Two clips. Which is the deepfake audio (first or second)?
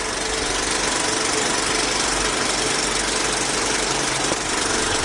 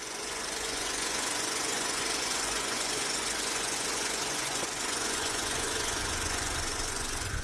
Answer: second